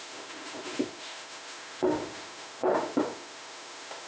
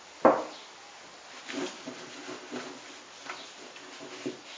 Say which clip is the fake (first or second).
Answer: first